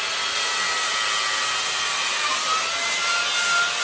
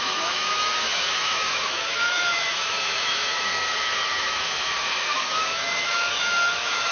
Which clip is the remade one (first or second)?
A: second